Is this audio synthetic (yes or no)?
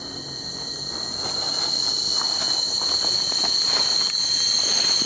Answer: no